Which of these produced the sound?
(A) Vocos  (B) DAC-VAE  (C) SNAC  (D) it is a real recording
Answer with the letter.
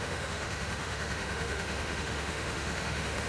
B